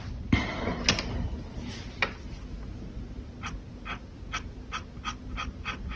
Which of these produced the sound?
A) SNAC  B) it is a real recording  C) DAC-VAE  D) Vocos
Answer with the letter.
B